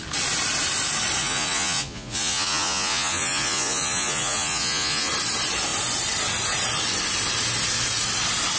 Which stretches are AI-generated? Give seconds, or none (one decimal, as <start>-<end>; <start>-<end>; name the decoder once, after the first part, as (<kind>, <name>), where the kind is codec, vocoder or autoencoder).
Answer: 1.2-5.1 (vocoder, Vocos)